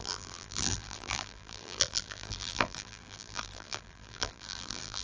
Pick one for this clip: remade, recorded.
remade